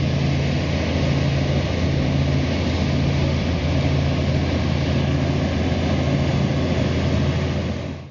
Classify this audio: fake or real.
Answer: real